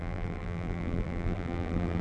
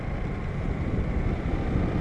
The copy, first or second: first